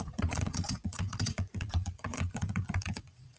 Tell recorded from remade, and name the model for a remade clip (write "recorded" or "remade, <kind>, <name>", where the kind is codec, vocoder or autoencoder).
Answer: remade, vocoder, Vocos